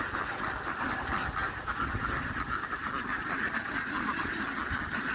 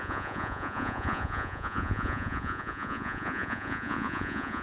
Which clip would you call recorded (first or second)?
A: first